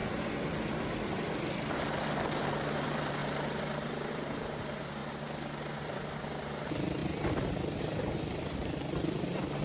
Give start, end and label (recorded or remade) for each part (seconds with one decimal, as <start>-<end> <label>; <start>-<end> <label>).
0.0-0.7 recorded; 0.7-3.2 remade; 3.2-4.1 recorded; 4.1-5.0 remade; 5.0-5.6 recorded; 5.6-7.0 remade; 7.0-7.8 recorded; 7.8-9.6 remade